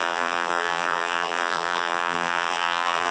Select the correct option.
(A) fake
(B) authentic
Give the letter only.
A